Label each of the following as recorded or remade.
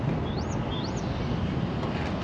recorded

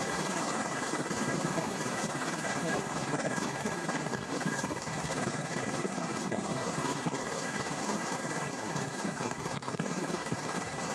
remade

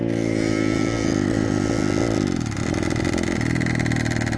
recorded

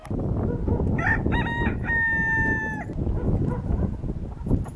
recorded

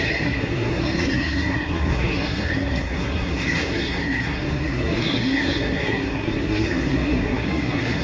remade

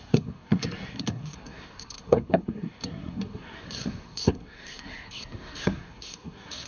remade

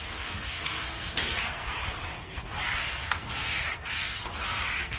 remade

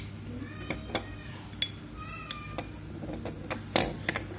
recorded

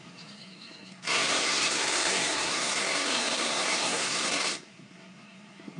remade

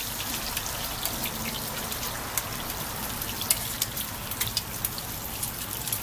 recorded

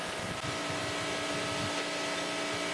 recorded